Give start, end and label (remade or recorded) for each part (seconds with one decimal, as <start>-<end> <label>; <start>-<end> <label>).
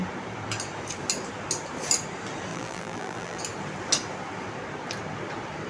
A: 0.0-2.5 recorded; 2.5-3.4 remade; 3.4-5.7 recorded